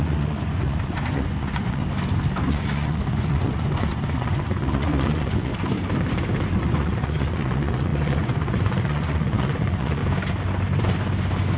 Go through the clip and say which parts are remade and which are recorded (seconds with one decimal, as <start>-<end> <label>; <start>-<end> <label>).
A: 0.0-1.8 remade; 1.8-2.5 recorded; 2.5-5.5 remade; 5.5-6.6 recorded; 6.6-10.0 remade; 10.0-11.6 recorded